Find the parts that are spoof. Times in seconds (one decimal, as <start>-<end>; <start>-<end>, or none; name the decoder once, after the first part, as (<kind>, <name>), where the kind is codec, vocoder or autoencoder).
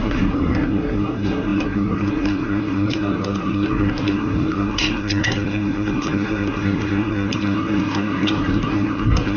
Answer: 0.0-9.4 (codec, SNAC)